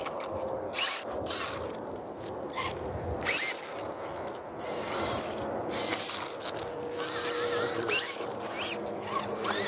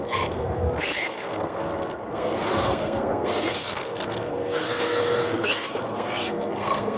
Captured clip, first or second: first